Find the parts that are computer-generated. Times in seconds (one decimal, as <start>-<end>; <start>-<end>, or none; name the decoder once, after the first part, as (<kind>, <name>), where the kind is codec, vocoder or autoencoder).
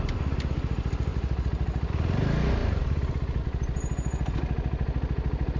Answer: 1.1-1.9 (vocoder, BigVGAN v2); 2.6-3.4